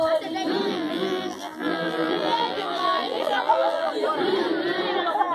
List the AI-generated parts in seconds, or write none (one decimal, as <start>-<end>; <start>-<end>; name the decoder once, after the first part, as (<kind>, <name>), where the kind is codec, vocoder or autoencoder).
0.7-3.9 (vocoder, BigVGAN v2)

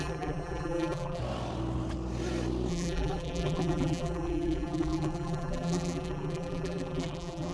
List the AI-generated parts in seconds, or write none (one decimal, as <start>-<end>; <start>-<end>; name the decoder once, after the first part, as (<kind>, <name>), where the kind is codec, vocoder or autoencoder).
0.0-1.2 (vocoder, BigVGAN v2); 2.7-7.5

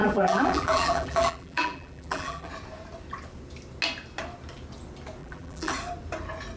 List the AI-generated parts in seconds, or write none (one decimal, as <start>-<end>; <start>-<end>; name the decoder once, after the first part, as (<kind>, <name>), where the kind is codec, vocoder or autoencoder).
0.0-2.5 (vocoder, BigVGAN v2); 5.2-5.7

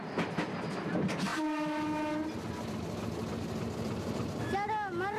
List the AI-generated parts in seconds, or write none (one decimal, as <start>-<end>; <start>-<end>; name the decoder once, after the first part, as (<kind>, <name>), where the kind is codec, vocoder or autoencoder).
none

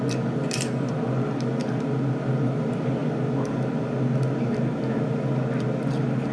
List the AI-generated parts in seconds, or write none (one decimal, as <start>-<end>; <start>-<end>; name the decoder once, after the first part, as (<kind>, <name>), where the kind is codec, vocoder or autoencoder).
none